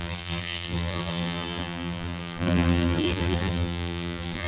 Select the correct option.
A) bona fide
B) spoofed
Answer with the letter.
B